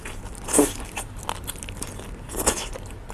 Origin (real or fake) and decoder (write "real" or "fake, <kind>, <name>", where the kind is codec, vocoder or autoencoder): real